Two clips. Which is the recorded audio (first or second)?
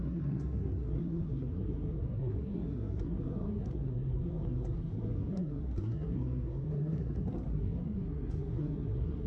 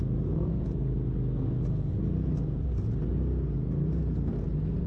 second